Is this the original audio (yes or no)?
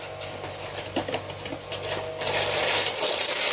yes